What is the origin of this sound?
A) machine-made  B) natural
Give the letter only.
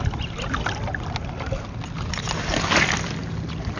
B